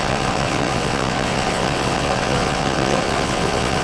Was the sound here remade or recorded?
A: remade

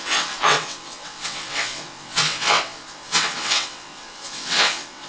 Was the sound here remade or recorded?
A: remade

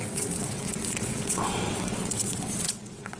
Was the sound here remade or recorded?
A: remade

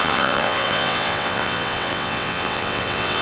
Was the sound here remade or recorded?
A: remade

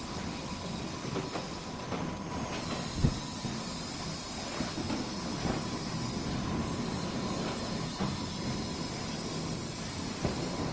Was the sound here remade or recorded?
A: recorded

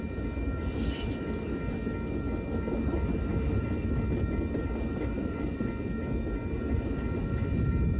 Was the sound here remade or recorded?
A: recorded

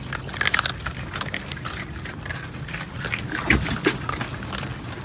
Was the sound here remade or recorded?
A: recorded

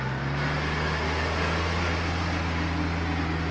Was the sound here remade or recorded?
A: recorded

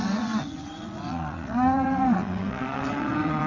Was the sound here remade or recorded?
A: remade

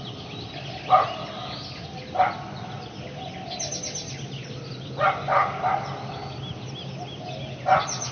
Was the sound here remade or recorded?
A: recorded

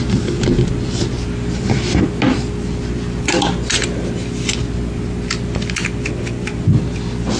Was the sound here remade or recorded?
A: recorded